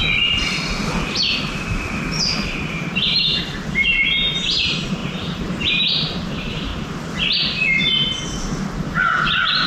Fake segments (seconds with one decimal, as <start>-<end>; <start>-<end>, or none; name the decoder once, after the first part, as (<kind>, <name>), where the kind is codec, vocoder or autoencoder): 2.6-6.7 (vocoder, BigVGAN v2)